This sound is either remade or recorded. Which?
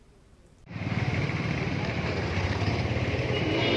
remade